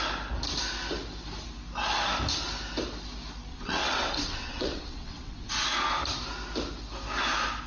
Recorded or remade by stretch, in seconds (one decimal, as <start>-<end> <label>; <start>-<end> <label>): 0.0-3.5 recorded; 3.5-5.5 remade; 5.5-7.7 recorded